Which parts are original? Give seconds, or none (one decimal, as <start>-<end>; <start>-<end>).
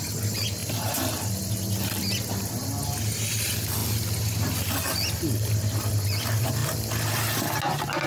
0.0-8.1